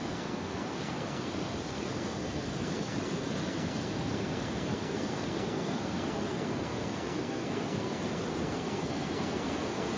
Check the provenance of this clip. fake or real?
fake